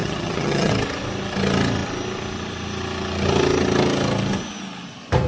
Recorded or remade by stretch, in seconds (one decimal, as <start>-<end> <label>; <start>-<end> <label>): 0.0-0.7 remade; 0.7-5.3 recorded